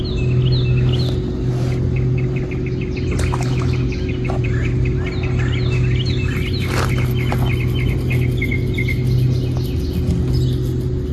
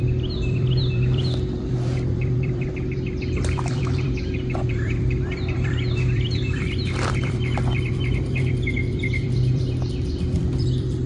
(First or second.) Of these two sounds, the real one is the first